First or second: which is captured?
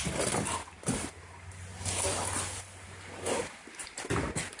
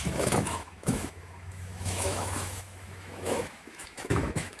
first